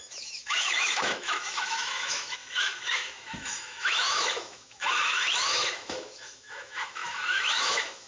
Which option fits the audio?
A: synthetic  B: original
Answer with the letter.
A